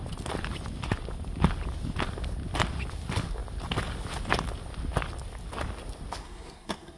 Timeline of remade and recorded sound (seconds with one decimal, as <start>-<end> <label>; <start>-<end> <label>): 0.0-6.2 recorded; 6.2-7.0 remade